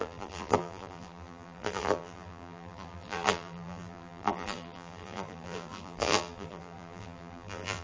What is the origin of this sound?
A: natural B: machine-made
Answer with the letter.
B